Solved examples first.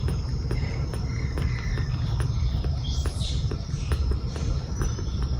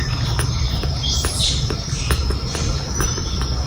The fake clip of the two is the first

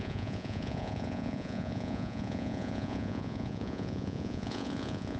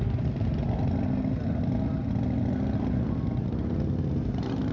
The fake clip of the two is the first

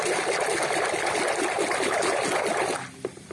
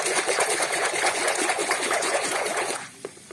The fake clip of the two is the second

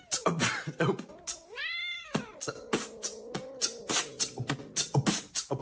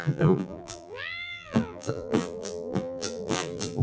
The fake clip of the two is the second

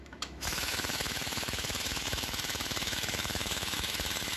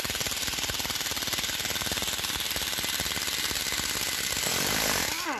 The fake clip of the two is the first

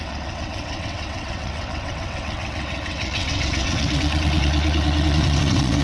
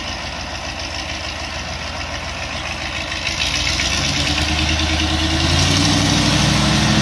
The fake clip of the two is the first